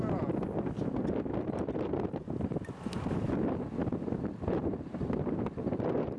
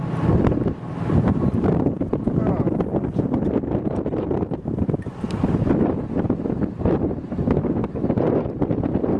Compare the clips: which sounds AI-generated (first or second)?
second